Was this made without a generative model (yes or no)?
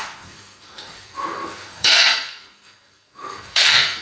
no